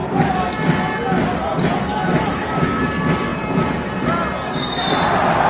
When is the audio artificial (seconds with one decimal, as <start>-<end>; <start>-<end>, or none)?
1.9-2.8